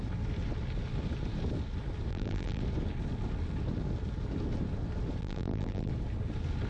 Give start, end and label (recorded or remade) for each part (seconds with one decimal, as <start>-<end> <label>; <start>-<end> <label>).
0.0-2.1 recorded; 2.1-2.6 remade; 2.6-5.2 recorded; 5.2-5.9 remade; 5.9-6.7 recorded